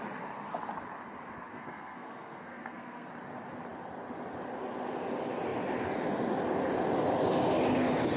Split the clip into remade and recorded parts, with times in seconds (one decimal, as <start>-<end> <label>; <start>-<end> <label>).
0.0-1.5 recorded; 1.5-3.1 remade; 3.1-8.2 recorded